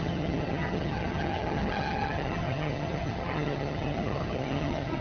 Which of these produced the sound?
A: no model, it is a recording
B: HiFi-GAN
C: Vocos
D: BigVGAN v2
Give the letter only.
B